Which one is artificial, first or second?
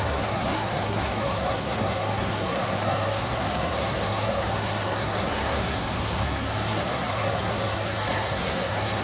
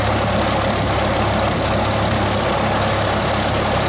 first